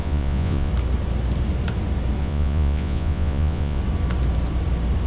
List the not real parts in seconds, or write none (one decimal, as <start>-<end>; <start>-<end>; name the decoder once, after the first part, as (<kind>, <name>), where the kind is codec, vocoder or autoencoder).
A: 0.0-0.7 (vocoder, Vocos); 2.2-3.8